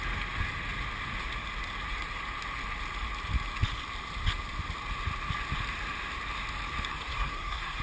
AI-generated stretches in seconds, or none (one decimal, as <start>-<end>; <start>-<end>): 6.9-7.8